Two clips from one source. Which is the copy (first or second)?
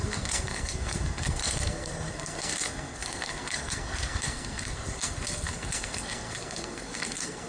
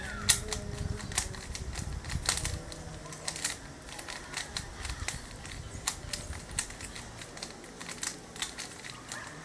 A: first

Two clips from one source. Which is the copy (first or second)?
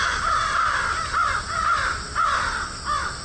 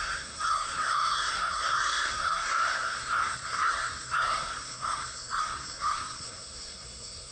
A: second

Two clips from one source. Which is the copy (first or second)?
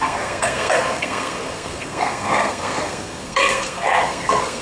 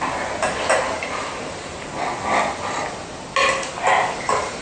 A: first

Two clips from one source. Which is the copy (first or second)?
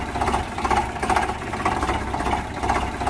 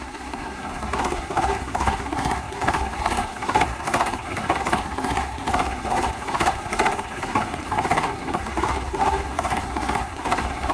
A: second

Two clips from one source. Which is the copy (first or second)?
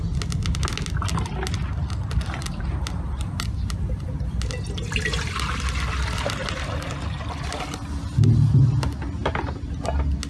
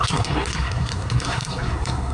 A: second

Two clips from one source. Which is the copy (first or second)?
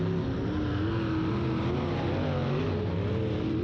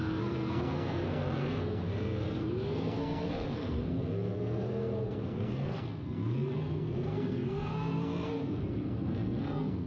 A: second